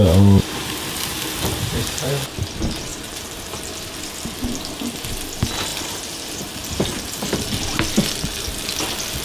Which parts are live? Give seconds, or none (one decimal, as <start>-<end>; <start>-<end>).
0.0-0.4; 2.1-2.9; 3.6-5.7; 7.4-9.2